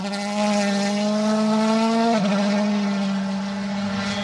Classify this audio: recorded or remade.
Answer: recorded